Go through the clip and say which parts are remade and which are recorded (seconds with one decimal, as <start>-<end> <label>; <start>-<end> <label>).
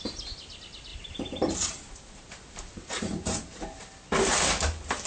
0.0-0.9 recorded; 0.9-4.0 remade; 4.0-5.1 recorded